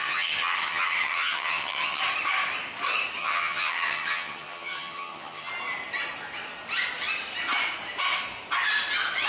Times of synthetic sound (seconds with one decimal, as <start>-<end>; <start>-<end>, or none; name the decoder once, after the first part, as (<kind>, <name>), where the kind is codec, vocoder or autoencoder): 0.0-2.0 (vocoder, HiFi-GAN); 3.2-5.5